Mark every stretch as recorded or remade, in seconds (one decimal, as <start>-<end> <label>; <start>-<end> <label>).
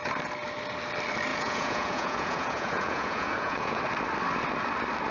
0.0-1.3 recorded; 1.3-3.8 remade; 3.8-5.1 recorded